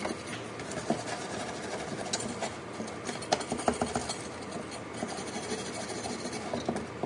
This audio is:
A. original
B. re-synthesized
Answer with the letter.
A